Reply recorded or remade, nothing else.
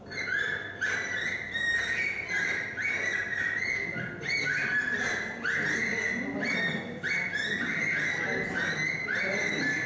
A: recorded